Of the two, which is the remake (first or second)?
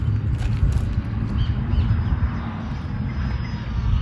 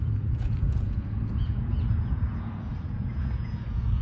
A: second